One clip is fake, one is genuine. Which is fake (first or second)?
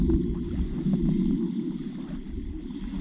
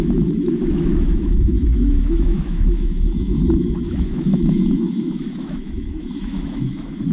second